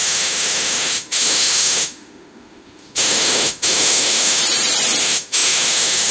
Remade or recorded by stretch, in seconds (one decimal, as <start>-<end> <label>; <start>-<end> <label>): 0.0-4.4 remade; 4.4-5.0 recorded; 5.0-6.1 remade